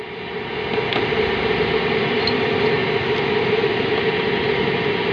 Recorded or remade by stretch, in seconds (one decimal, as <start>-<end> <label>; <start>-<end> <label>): 0.0-2.8 recorded; 2.8-3.9 remade; 3.9-5.1 recorded